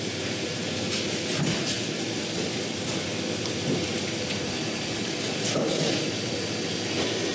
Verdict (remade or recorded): recorded